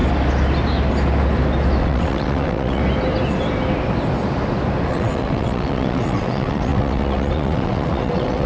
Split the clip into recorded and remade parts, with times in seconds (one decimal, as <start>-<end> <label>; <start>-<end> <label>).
0.0-1.8 recorded; 1.8-2.8 remade; 2.8-4.9 recorded; 4.9-8.5 remade